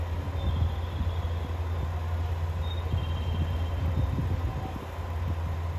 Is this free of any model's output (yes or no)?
yes